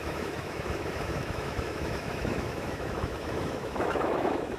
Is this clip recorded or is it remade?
remade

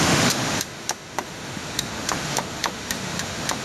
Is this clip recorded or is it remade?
remade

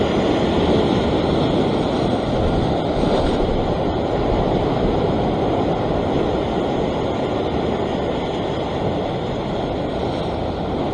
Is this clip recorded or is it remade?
recorded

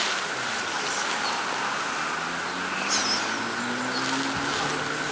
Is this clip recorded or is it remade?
recorded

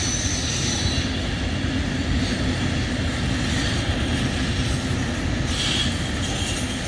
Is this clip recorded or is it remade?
recorded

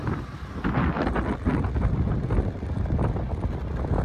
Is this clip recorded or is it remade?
recorded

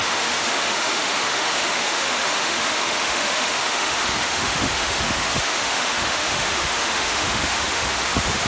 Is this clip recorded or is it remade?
remade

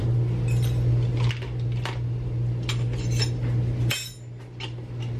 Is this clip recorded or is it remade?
recorded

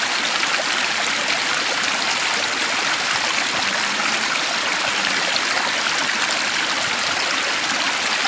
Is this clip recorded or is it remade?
recorded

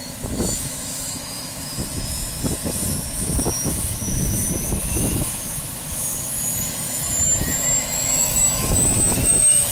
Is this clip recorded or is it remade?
remade